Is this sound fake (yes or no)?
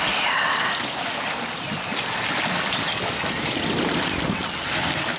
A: no